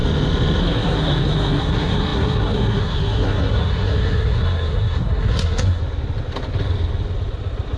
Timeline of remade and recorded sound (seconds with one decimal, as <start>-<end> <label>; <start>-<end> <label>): 0.0-0.6 recorded; 0.6-5.8 remade; 5.8-7.8 recorded